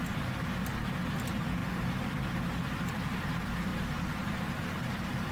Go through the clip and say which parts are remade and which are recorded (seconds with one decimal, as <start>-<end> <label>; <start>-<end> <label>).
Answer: 0.0-5.3 recorded